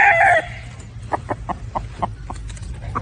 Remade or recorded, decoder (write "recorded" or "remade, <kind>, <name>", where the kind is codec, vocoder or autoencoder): recorded